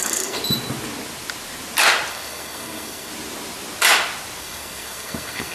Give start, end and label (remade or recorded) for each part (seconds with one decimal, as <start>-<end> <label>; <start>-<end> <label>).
0.0-0.4 remade; 0.4-2.1 recorded; 2.1-3.1 remade; 3.1-4.4 recorded; 4.4-5.5 remade